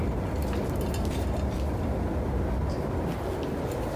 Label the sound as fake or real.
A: real